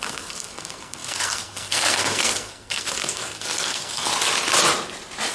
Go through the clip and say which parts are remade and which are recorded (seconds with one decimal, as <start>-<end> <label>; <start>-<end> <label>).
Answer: 0.0-4.1 remade; 4.1-5.3 recorded